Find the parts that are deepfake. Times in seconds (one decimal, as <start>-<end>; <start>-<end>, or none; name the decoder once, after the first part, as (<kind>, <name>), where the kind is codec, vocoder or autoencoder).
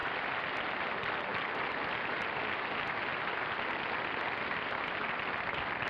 none